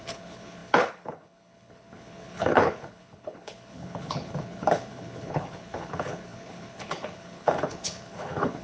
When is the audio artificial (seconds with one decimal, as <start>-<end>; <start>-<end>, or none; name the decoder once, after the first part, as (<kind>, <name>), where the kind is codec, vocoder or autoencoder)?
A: 0.0-8.6 (codec, HILCodec)